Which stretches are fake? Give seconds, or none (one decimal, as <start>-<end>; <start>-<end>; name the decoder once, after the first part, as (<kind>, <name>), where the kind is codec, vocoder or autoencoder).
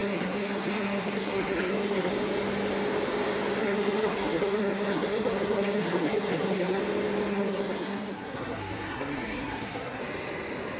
0.0-2.1 (codec, SNAC); 3.6-6.8; 7.3-10.0